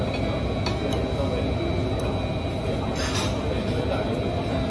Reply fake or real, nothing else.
real